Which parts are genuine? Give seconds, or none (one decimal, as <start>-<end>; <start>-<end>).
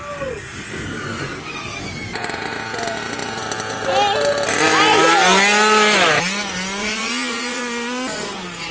0.0-6.8; 7.6-8.7